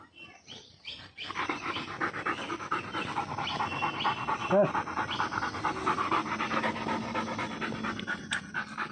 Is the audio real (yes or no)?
yes